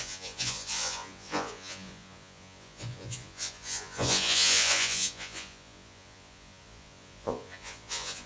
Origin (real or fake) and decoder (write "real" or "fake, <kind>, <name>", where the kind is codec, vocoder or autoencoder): fake, vocoder, Vocos